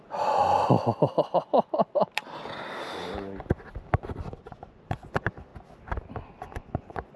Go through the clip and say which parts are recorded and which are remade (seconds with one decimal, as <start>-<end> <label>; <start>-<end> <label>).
0.0-0.4 remade; 0.4-4.4 recorded; 4.4-5.5 remade; 5.5-6.4 recorded; 6.4-7.2 remade